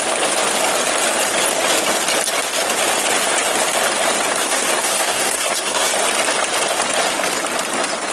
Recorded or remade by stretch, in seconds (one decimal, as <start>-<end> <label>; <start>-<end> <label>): 0.0-4.4 recorded; 4.4-5.9 remade; 5.9-8.1 recorded